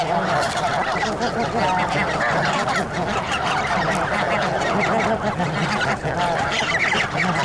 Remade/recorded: recorded